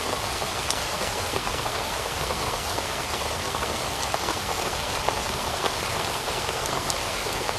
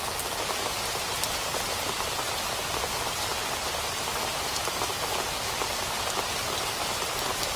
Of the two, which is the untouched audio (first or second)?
second